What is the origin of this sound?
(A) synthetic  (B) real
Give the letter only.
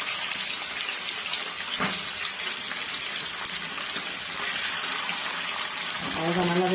B